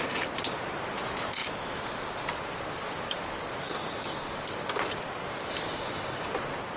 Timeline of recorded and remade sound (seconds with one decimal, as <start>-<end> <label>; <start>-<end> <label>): 0.0-6.8 recorded